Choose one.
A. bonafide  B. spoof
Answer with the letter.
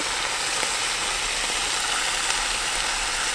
A